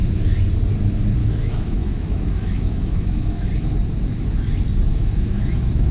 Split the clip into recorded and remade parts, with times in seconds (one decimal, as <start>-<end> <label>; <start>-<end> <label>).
0.0-1.2 recorded; 1.2-3.5 remade; 3.5-4.9 recorded; 4.9-5.9 remade

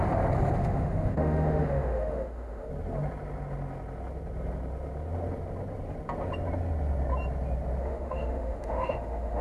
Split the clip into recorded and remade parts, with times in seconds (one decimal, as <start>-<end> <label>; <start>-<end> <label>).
0.0-0.6 recorded; 0.6-2.7 remade; 2.7-7.8 recorded; 7.8-9.4 remade